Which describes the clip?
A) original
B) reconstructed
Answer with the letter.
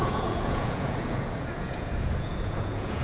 B